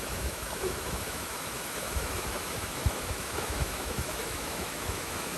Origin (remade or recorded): remade